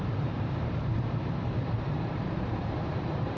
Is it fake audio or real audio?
fake